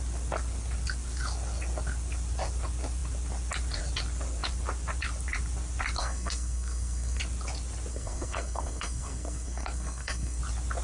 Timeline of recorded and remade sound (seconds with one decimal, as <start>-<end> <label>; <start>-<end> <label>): 0.0-6.0 recorded; 6.0-7.2 remade; 7.2-7.9 recorded; 7.9-10.4 remade; 10.4-10.8 recorded